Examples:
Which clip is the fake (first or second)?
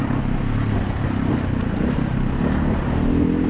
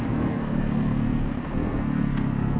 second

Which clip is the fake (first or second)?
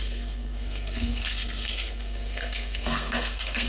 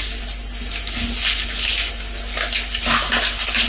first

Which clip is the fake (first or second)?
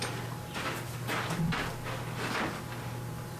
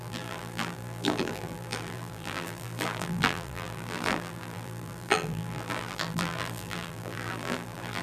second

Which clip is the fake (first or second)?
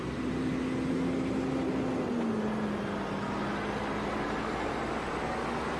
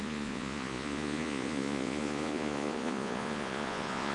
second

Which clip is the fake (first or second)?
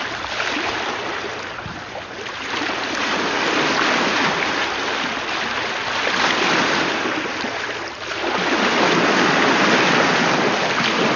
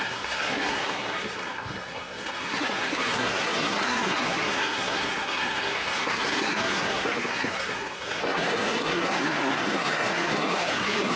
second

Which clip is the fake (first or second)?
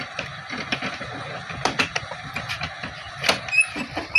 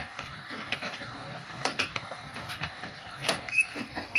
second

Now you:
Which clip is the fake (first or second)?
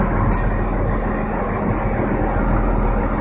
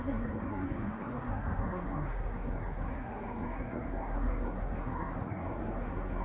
second